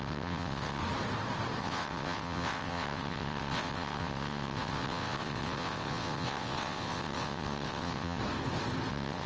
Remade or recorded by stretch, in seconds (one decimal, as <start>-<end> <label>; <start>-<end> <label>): 0.0-0.8 remade; 0.8-1.6 recorded; 1.6-8.2 remade; 8.2-8.9 recorded; 8.9-9.3 remade